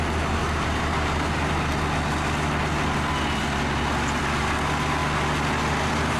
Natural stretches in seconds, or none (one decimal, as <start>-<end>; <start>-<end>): 0.0-0.4; 1.4-6.2